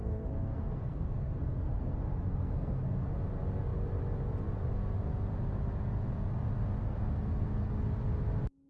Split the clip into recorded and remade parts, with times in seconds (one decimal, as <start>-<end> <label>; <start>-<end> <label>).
0.0-3.1 remade; 3.1-6.8 recorded; 6.8-7.7 remade; 7.7-8.7 recorded

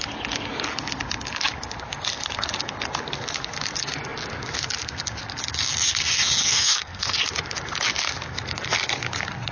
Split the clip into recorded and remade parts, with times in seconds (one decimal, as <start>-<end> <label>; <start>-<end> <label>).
0.0-6.4 recorded; 6.4-7.1 remade; 7.1-9.5 recorded

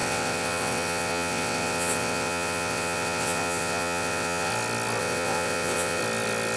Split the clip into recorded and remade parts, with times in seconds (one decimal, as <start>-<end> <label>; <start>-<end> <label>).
0.0-4.5 remade; 4.5-5.0 recorded; 5.0-6.0 remade; 6.0-6.6 recorded

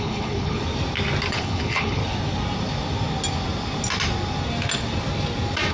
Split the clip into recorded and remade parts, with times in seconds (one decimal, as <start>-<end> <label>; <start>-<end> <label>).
0.0-0.6 remade; 0.6-1.3 recorded; 1.3-2.0 remade; 2.0-5.7 recorded

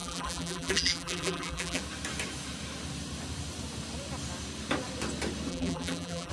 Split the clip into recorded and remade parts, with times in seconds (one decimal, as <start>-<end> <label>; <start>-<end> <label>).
0.0-1.8 remade; 1.8-5.5 recorded; 5.5-6.3 remade

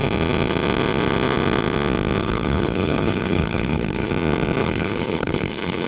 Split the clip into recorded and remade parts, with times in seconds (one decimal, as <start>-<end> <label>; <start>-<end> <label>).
0.0-2.2 recorded; 2.2-4.1 remade; 4.1-4.6 recorded; 4.6-5.9 remade